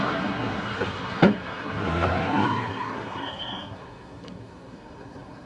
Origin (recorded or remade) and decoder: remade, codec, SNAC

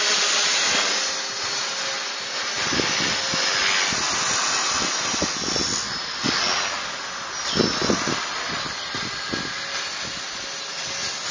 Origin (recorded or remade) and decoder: recorded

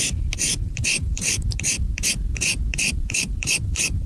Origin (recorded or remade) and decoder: remade, vocoder, BigVGAN v2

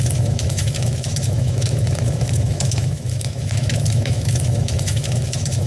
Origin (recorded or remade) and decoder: remade, autoencoder, DAC-VAE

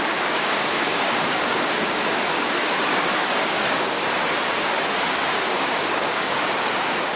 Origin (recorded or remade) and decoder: remade, codec, DAC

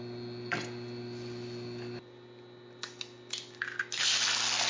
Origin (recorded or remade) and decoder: recorded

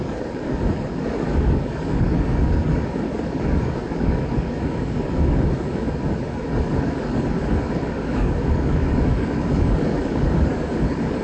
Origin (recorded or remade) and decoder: remade, codec, DAC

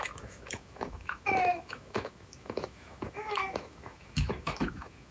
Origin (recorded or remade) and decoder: remade, autoencoder, DAC-VAE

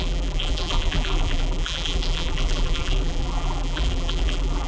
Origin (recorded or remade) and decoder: remade, vocoder, BigVGAN v2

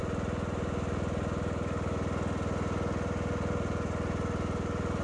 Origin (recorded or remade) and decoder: recorded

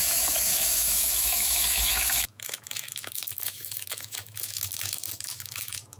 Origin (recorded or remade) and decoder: remade, autoencoder, DAC-VAE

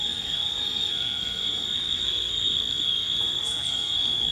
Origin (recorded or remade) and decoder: remade, codec, SNAC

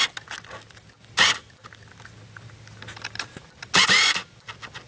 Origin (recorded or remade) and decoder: recorded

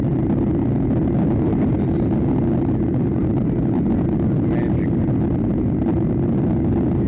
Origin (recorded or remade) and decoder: recorded